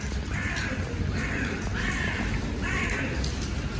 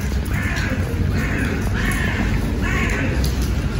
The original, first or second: second